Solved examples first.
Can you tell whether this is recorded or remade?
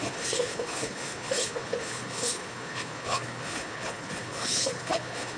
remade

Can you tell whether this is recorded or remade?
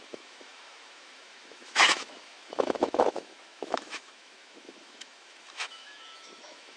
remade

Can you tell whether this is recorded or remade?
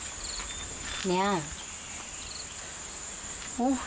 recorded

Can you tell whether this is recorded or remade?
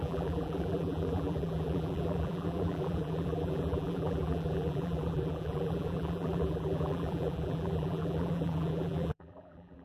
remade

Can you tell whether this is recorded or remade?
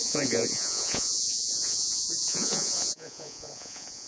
remade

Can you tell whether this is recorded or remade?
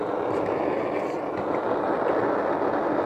recorded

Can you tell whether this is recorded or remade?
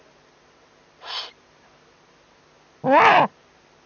recorded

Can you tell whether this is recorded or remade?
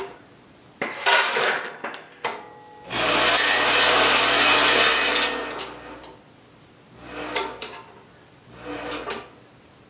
recorded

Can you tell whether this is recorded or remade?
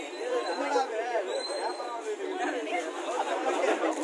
recorded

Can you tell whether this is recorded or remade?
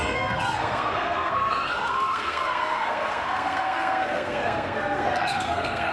remade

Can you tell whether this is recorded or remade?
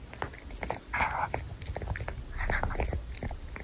recorded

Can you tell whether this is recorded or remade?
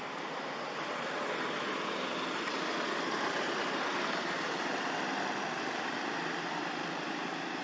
recorded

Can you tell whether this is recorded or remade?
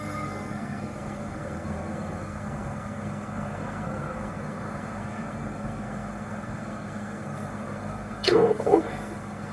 remade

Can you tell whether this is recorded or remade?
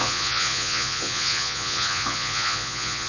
remade